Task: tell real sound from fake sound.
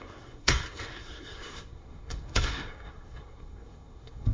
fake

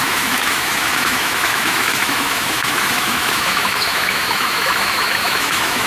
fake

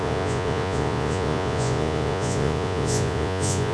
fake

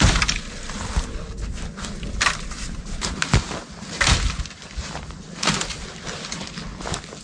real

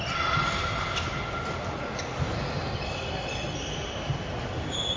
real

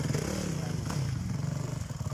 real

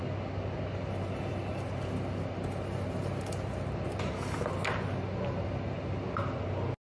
real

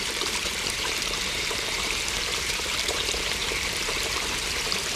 fake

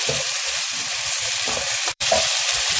fake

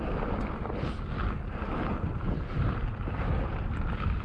real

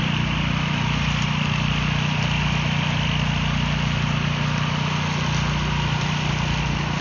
real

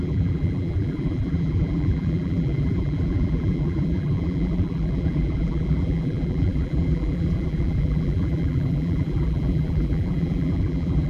fake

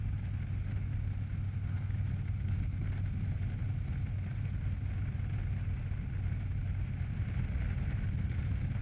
real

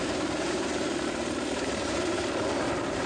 fake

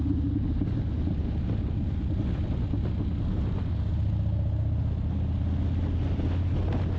real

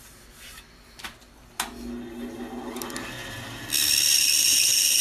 real